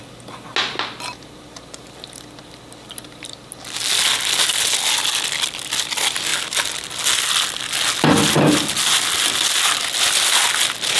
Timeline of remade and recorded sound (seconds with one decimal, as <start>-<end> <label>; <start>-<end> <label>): 0.0-11.0 recorded

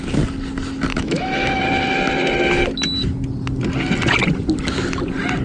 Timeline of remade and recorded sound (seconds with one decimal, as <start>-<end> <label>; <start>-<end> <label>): 0.0-0.9 recorded; 0.9-1.6 remade; 1.6-5.4 recorded

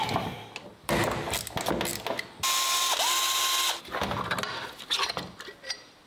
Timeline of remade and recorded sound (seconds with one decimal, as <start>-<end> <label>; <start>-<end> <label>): 0.0-6.1 recorded

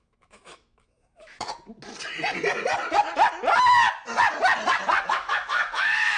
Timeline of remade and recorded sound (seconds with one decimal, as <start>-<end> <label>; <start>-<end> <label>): 0.0-1.5 remade; 1.5-5.1 recorded; 5.1-6.2 remade